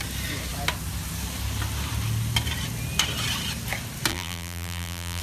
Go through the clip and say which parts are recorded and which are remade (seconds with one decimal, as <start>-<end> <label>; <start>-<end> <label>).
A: 0.0-4.1 recorded; 4.1-5.2 remade